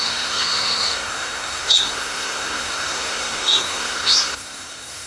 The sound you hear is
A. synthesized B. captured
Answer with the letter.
A